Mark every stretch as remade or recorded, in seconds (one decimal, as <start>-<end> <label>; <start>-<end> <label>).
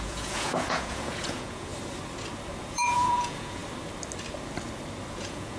0.0-1.7 remade; 1.7-2.6 recorded; 2.6-3.6 remade; 3.6-5.1 recorded; 5.1-5.6 remade